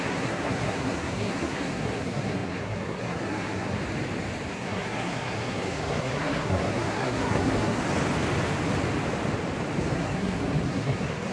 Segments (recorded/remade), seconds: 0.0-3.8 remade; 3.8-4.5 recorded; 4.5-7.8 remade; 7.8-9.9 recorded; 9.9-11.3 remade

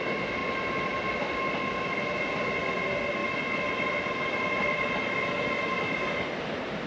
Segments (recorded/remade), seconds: 0.0-6.9 recorded

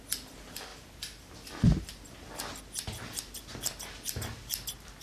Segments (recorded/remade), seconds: 0.0-5.0 recorded

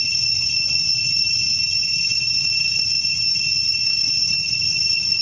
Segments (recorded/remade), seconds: 0.0-4.2 recorded; 4.2-5.2 remade